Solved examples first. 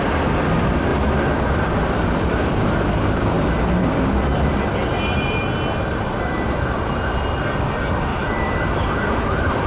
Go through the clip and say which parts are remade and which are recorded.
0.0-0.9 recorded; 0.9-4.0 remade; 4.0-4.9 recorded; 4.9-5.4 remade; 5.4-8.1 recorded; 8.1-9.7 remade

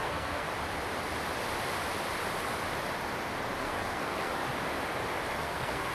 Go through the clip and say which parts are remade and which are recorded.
0.0-0.5 remade; 0.5-3.6 recorded; 3.6-4.4 remade; 4.4-5.3 recorded; 5.3-5.9 remade

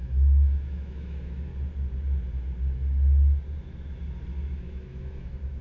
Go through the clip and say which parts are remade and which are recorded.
0.0-1.5 remade; 1.5-4.6 recorded; 4.6-5.6 remade

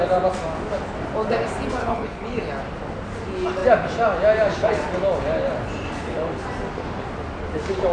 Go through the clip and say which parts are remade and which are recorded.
0.0-1.8 recorded; 1.8-2.4 remade; 2.4-7.9 recorded

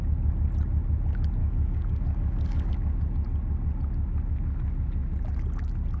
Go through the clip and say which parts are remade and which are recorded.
0.0-1.4 recorded; 1.4-2.7 remade; 2.7-6.0 recorded

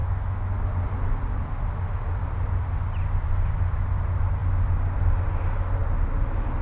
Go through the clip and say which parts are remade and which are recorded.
0.0-0.5 remade; 0.5-6.6 recorded